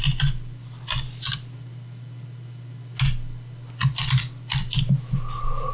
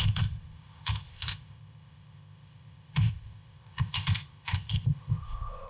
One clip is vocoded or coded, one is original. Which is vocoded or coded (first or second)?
second